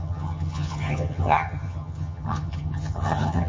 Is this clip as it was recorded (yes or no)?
no